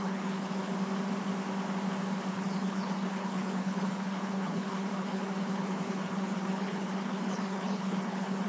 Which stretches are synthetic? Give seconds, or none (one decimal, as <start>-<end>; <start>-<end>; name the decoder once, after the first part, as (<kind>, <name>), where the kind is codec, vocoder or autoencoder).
0.0-0.7 (codec, HILCodec); 2.3-8.5